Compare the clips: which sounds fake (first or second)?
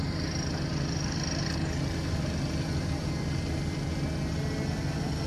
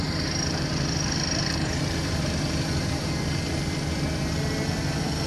second